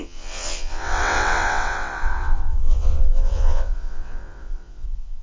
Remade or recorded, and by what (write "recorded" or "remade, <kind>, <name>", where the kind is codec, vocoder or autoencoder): remade, vocoder, WaveNeXt